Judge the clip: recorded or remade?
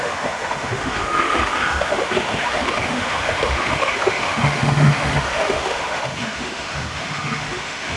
remade